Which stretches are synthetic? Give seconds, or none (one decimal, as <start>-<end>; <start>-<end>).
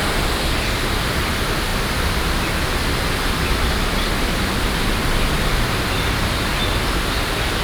none